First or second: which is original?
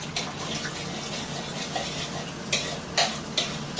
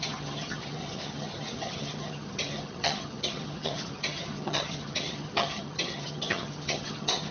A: first